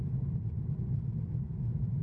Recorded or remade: recorded